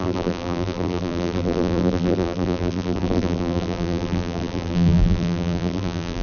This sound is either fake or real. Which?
fake